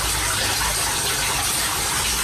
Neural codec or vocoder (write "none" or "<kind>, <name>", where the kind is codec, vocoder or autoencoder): none